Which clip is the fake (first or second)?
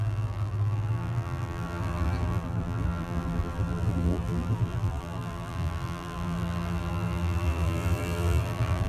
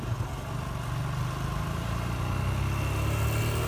first